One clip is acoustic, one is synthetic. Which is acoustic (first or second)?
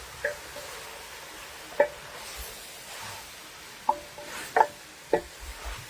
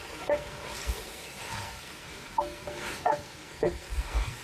first